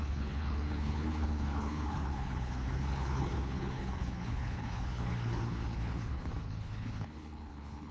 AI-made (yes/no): yes